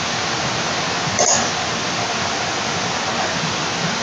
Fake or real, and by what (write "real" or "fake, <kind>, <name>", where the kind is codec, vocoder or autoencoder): real